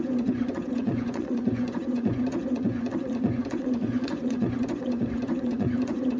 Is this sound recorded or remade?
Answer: remade